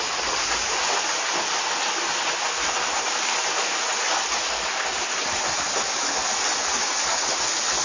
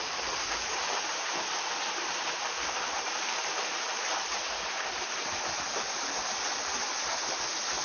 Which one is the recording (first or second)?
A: first